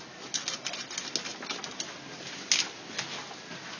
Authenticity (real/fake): real